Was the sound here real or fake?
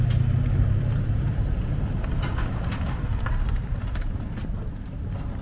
real